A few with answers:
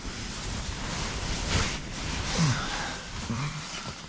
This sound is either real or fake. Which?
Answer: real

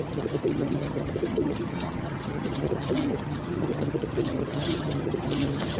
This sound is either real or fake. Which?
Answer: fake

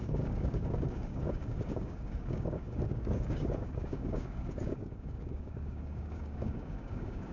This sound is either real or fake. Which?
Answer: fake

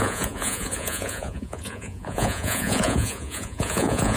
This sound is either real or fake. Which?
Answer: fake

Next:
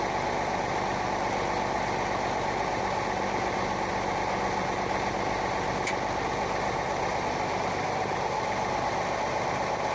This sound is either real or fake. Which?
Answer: real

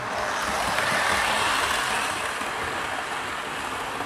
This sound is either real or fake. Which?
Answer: real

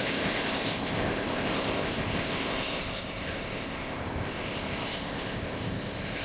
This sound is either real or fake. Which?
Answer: fake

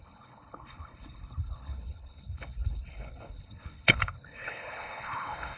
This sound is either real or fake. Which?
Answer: fake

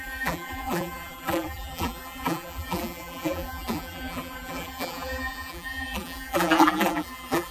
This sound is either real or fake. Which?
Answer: fake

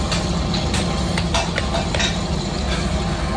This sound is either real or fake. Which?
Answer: real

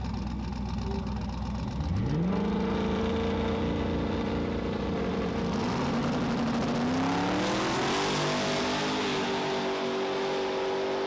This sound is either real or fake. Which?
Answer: real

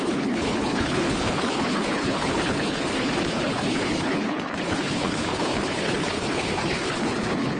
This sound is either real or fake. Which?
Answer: fake